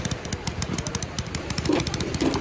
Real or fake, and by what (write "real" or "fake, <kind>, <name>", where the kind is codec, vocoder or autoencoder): real